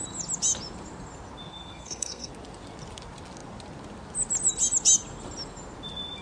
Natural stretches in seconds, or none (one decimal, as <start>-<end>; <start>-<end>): 0.0-1.5; 2.3-6.2